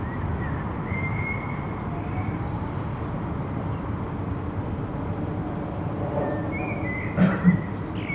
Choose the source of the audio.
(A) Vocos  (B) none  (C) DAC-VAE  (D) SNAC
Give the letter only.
B